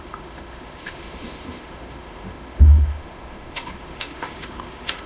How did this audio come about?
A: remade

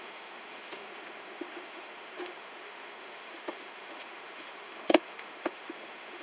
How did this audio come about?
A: remade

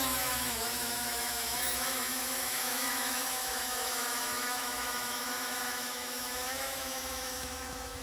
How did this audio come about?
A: remade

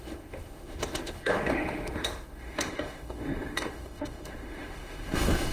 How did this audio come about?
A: remade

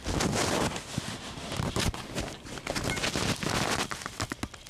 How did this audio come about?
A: recorded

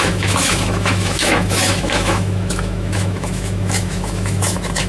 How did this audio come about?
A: remade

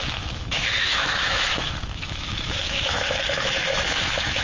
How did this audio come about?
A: remade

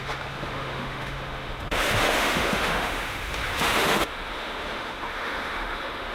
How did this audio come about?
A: remade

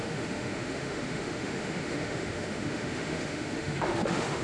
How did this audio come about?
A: remade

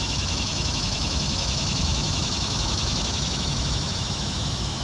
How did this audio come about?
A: remade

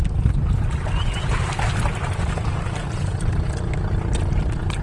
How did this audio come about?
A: recorded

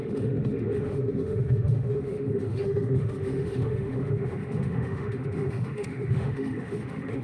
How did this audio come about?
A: remade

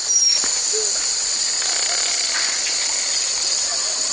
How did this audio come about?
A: recorded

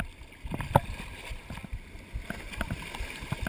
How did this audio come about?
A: recorded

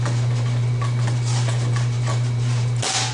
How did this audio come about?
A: recorded